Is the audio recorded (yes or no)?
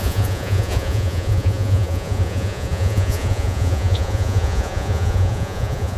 no